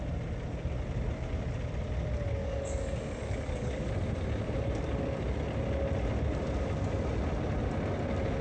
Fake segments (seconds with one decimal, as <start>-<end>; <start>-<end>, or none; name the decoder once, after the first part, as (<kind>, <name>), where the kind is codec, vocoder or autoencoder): 2.4-3.9 (codec, DAC)